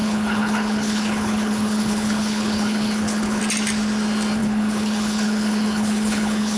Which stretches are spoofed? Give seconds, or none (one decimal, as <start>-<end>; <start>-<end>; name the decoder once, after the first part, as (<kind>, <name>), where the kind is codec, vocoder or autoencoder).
0.0-3.4 (codec, HILCodec); 4.4-6.6